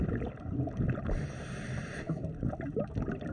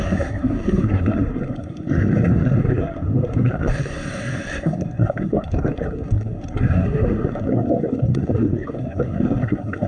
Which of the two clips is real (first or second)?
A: first